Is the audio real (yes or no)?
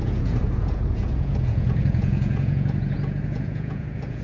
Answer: no